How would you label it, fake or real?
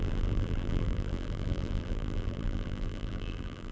fake